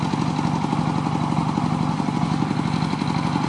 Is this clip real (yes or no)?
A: yes